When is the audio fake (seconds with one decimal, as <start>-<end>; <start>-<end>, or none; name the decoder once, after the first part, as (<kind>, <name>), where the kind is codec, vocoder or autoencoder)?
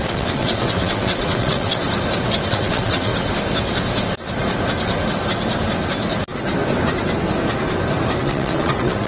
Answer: 0.0-1.8 (vocoder, WaveNeXt); 2.5-3.1; 8.2-9.1